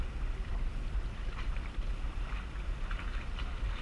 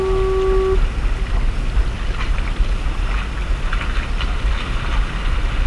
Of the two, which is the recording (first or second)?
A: second